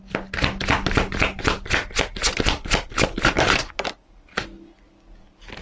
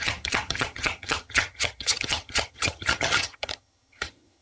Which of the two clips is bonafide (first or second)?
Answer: first